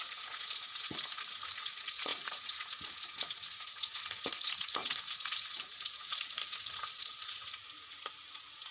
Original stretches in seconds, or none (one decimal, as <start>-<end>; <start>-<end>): none